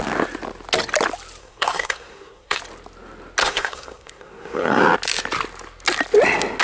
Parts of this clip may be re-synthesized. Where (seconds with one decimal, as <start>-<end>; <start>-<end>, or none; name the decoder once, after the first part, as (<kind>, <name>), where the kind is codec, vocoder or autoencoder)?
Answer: 1.4-2.6 (codec, SNAC); 3.4-4.8